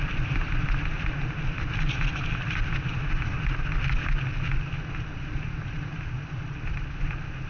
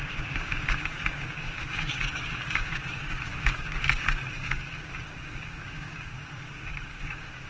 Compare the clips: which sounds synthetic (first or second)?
second